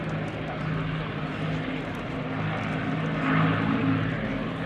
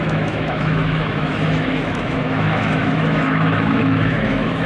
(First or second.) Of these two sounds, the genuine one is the first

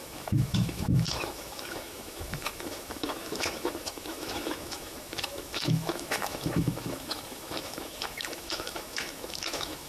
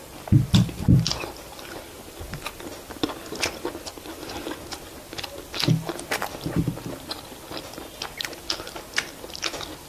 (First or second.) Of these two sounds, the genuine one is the second